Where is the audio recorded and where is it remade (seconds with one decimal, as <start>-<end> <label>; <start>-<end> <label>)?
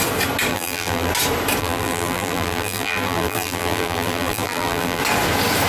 0.0-0.5 recorded; 0.5-1.1 remade; 1.1-1.6 recorded; 1.6-5.0 remade; 5.0-5.7 recorded